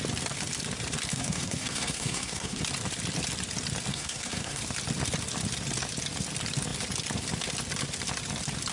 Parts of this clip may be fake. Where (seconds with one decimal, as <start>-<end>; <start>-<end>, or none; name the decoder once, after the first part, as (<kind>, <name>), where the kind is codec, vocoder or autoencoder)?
1.1-2.6 (codec, SNAC); 3.9-4.6

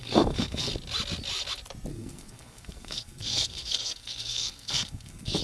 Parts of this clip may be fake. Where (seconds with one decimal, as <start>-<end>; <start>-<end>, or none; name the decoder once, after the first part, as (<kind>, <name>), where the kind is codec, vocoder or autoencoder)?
0.0-0.7 (codec, SNAC); 1.9-5.4